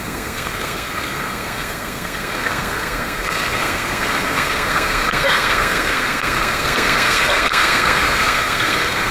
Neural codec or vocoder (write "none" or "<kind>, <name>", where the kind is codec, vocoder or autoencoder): codec, SNAC